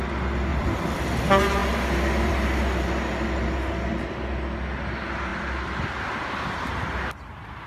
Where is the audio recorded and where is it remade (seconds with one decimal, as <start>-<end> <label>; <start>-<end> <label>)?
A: 0.0-0.5 recorded; 0.5-1.0 remade; 1.0-5.3 recorded; 5.3-7.2 remade; 7.2-7.7 recorded